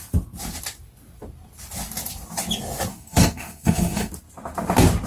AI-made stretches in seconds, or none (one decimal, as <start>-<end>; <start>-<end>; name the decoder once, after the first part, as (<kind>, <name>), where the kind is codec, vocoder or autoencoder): 2.9-4.1 (codec, SNAC)